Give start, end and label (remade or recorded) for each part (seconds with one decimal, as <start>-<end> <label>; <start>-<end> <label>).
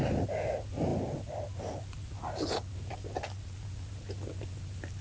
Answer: 0.0-5.0 recorded